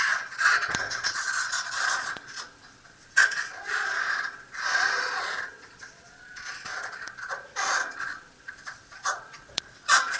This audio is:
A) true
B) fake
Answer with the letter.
B